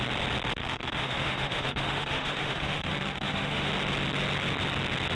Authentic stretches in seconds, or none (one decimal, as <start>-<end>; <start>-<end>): 0.0-0.6; 3.7-5.1